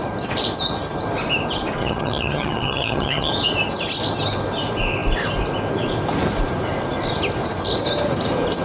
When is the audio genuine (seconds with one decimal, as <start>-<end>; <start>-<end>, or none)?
0.0-1.8; 3.3-8.6